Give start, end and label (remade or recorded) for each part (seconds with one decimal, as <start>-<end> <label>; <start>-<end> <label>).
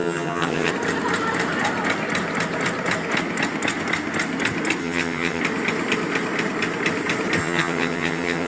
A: 0.0-0.7 remade; 0.7-4.8 recorded; 4.8-5.4 remade; 5.4-7.4 recorded; 7.4-8.5 remade